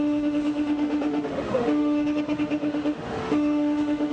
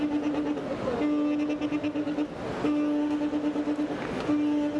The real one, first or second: second